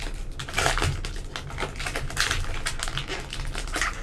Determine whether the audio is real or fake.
real